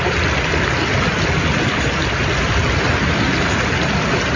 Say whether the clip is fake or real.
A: real